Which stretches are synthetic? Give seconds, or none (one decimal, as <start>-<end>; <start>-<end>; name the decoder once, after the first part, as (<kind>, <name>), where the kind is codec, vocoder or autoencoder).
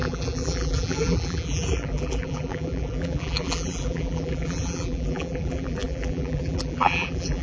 0.0-7.4 (vocoder, BigVGAN v2)